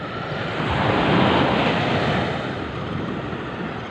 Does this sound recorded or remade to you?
recorded